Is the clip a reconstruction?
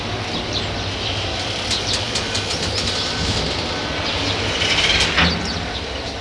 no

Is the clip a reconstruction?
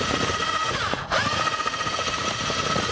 yes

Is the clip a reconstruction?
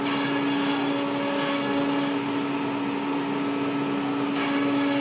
no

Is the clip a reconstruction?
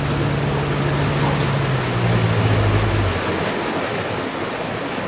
no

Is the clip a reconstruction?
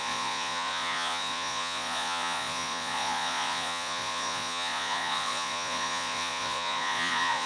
yes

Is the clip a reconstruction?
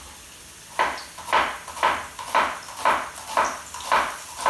no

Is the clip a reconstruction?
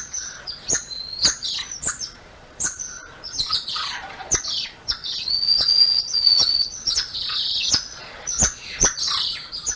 yes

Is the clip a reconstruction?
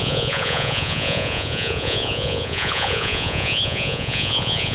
yes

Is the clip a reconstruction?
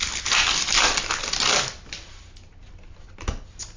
no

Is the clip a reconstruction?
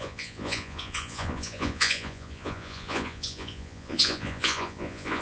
yes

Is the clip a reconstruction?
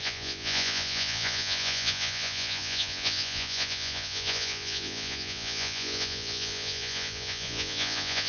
yes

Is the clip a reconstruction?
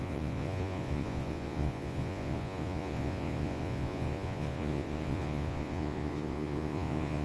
yes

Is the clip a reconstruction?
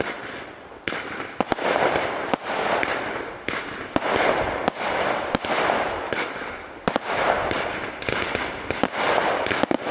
no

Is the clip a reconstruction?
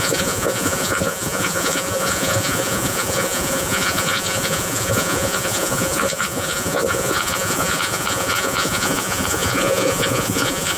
yes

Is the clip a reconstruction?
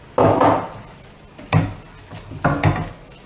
no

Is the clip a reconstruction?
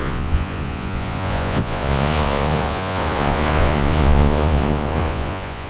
yes